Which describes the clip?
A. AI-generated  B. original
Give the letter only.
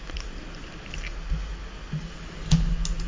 B